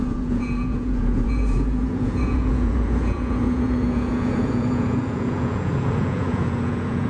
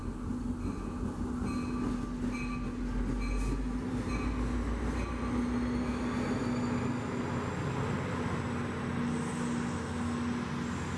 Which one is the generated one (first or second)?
first